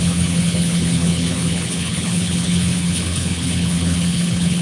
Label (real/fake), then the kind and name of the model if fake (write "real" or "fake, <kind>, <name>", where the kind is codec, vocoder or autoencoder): fake, codec, HILCodec